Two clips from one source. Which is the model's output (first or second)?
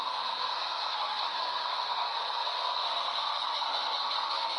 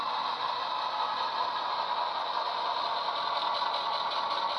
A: first